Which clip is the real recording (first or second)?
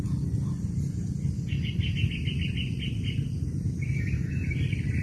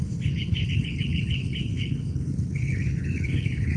first